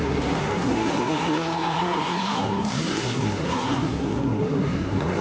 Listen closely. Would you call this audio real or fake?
fake